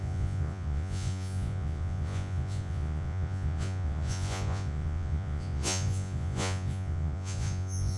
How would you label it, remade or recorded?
remade